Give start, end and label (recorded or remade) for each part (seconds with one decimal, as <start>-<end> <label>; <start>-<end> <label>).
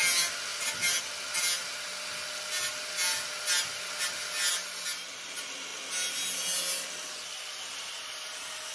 0.0-8.7 recorded